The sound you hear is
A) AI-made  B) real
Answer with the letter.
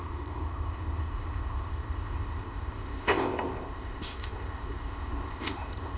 A